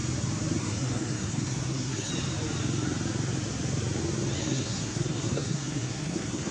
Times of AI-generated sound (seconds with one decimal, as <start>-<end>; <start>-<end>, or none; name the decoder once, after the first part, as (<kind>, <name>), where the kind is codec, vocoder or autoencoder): 0.6-2.1 (codec, SNAC); 4.4-6.5